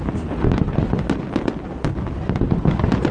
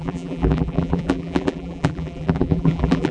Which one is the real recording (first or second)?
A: first